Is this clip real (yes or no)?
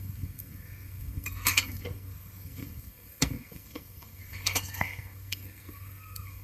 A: no